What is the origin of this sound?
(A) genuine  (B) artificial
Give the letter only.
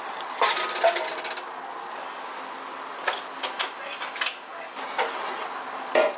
A